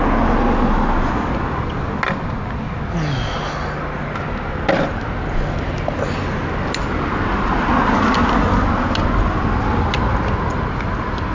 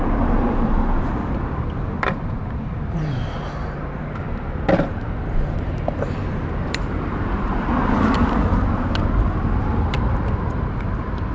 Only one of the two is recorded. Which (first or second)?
first